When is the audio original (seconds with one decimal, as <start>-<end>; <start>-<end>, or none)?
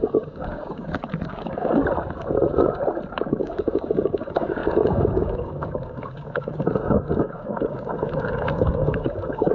1.8-3.1